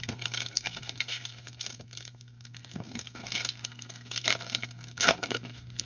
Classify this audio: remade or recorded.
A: remade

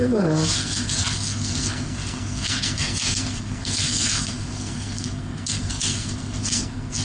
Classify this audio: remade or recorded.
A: remade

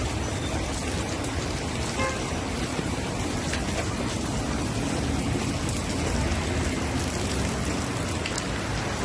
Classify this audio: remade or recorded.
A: recorded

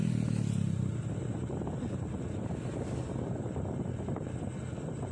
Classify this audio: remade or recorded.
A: recorded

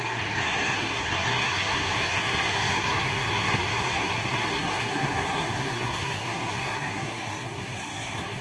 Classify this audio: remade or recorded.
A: remade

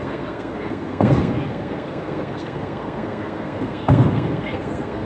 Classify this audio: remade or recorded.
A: remade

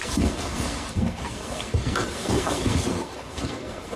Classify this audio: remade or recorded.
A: remade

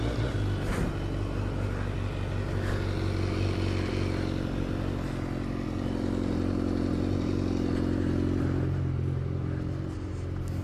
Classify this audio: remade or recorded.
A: recorded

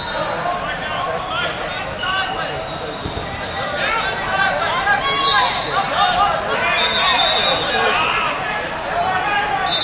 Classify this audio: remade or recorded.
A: recorded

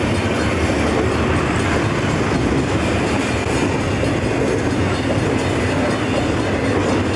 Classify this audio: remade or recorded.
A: recorded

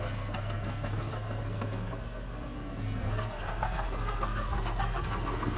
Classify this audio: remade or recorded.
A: remade